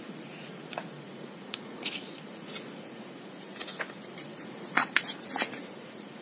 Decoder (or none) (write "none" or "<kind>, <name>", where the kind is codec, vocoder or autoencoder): vocoder, Vocos